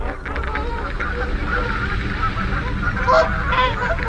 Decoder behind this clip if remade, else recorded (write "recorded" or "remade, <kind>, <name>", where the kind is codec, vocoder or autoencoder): recorded